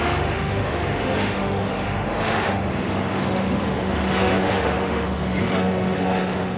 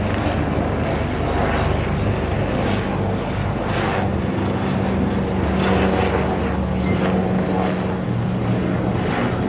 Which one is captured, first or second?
second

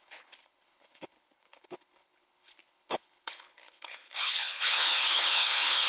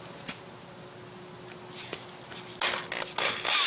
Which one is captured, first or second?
second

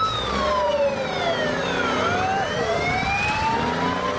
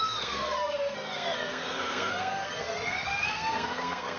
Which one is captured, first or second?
first